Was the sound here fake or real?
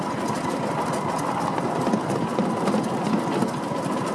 real